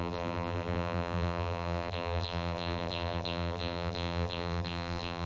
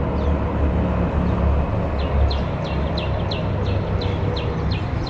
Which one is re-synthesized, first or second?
first